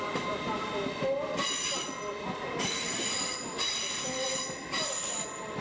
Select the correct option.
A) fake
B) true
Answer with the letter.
B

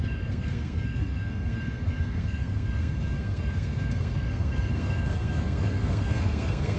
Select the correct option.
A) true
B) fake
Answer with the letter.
B